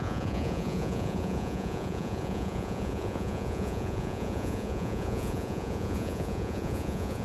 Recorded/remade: remade